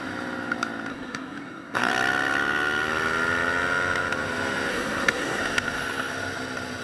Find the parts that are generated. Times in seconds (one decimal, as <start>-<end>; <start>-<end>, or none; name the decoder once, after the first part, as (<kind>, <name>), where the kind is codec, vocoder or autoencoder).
0.9-1.9 (codec, SNAC); 4.7-5.4